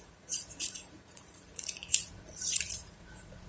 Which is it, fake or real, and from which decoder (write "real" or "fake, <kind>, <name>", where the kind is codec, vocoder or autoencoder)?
fake, vocoder, Vocos